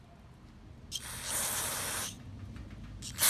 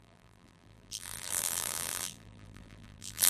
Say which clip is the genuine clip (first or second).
first